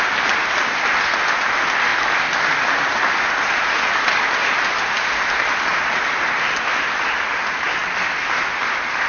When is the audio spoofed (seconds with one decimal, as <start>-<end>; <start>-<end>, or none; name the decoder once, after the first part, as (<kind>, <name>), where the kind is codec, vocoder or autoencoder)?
none